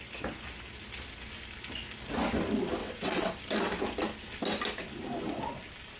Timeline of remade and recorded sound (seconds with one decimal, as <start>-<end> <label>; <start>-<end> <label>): 0.0-2.8 recorded; 2.8-3.4 remade; 3.4-6.0 recorded

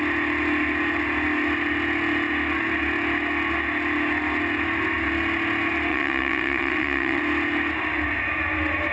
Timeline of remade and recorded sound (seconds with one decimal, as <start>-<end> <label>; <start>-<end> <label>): 0.0-5.9 recorded; 5.9-7.2 remade; 7.2-8.9 recorded